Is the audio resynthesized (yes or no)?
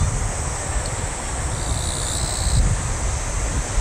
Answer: no